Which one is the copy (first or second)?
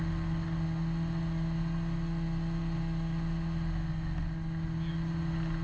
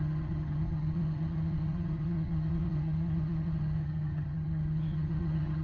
second